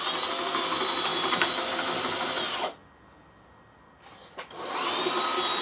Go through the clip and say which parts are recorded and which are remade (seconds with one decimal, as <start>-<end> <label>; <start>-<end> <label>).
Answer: 0.0-5.6 recorded